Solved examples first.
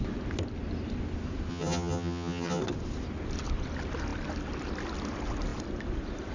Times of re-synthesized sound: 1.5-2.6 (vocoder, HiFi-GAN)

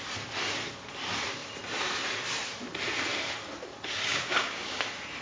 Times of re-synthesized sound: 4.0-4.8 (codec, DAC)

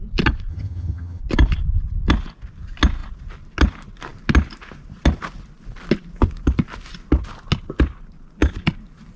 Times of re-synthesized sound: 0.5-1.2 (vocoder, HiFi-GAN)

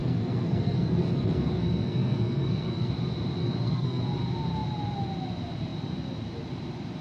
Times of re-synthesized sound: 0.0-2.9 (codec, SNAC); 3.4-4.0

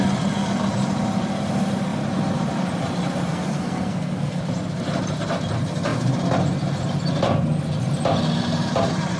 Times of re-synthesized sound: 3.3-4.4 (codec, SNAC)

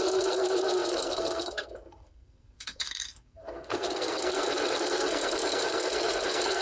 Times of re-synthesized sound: 0.0-6.6 (codec, SNAC)

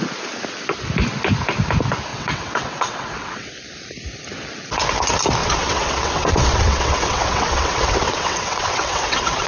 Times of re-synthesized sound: 2.1-3.5 (vocoder, WaveNeXt); 5.4-9.5